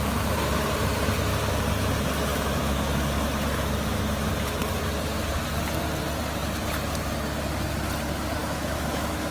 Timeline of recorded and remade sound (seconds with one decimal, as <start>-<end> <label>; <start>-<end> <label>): 0.0-2.3 recorded; 2.3-3.1 remade; 3.1-8.4 recorded; 8.4-9.3 remade